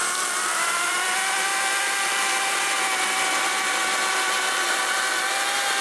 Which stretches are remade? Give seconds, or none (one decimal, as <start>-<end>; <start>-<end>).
0.0-1.5; 4.8-5.8

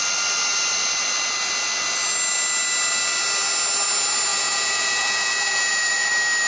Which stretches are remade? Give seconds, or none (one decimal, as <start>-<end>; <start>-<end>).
4.3-6.1

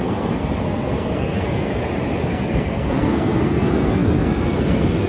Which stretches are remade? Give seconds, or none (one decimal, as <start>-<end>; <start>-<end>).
0.0-1.7; 2.3-5.1

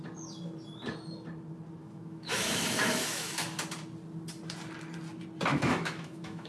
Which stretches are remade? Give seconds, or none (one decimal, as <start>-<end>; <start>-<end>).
1.8-3.4; 5.5-6.5

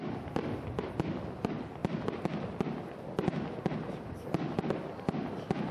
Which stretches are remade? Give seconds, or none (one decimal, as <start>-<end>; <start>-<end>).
none

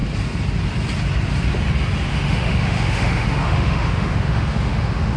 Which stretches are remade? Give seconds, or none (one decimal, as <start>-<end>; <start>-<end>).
2.1-5.2

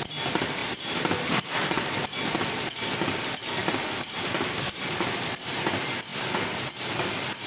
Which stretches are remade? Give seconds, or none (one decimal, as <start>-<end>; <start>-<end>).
0.6-2.2; 3.6-4.9